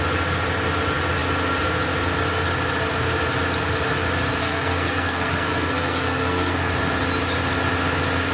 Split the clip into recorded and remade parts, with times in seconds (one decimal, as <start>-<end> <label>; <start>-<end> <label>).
0.0-4.4 recorded; 4.4-6.7 remade; 6.7-8.3 recorded